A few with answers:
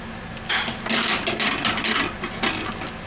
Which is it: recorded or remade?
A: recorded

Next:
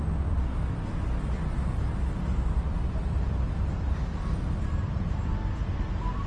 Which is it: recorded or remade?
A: recorded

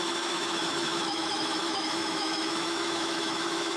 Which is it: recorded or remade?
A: remade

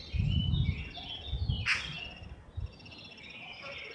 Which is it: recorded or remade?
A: recorded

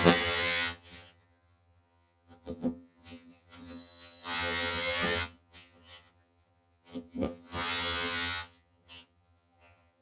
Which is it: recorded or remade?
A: remade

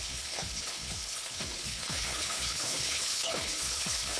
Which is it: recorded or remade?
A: remade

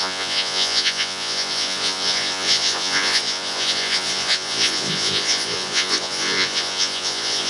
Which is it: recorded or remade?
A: remade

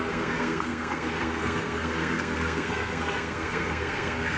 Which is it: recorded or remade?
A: remade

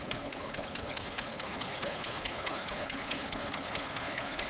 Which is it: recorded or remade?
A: remade